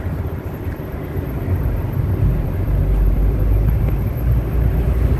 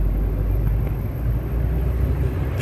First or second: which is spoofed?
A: first